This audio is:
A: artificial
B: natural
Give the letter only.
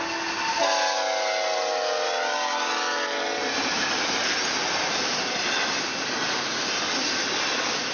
B